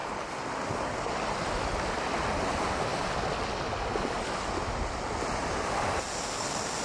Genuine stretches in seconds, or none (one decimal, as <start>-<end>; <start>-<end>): 0.0-6.8